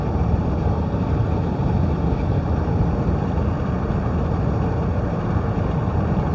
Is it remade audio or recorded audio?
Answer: remade